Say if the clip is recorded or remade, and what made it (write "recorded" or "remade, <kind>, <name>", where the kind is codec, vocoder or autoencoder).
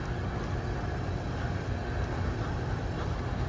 recorded